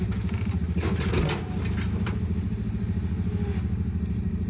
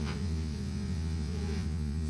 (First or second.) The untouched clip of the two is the first